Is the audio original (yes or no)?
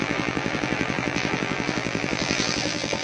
no